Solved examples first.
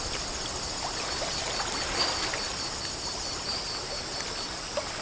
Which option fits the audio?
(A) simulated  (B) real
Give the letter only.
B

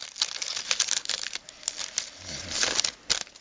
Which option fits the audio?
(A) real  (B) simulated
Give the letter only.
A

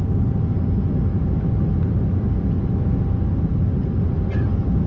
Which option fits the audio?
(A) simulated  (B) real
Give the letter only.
B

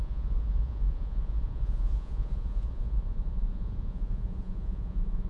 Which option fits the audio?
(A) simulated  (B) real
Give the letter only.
A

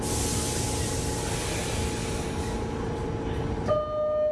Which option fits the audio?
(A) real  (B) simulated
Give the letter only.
A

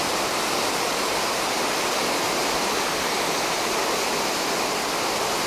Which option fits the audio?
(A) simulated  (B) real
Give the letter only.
B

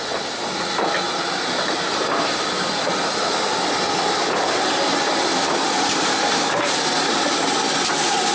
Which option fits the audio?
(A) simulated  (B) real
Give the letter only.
B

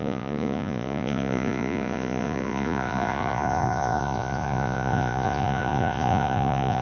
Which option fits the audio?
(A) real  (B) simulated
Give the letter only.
B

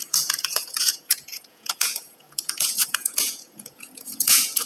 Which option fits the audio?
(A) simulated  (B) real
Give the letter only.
A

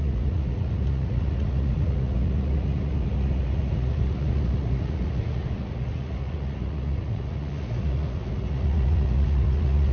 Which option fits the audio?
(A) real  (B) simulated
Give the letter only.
B